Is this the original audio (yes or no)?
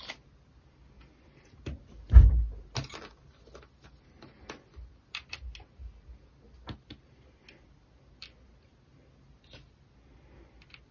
yes